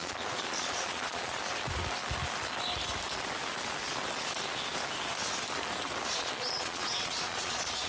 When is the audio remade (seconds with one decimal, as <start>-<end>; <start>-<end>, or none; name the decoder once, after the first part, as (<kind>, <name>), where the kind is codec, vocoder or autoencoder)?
0.0-1.4 (vocoder, Vocos); 6.1-7.9